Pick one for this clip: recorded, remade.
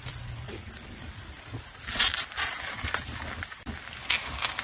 recorded